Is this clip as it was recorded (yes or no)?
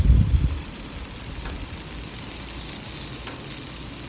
yes